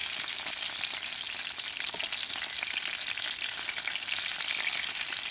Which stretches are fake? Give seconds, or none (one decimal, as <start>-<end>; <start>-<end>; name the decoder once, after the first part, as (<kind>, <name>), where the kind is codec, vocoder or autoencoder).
none